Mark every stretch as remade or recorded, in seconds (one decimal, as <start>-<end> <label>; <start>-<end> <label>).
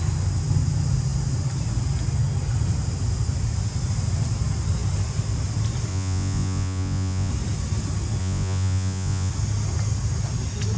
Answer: 0.0-5.9 recorded; 5.9-7.3 remade; 7.3-8.2 recorded; 8.2-9.3 remade; 9.3-10.8 recorded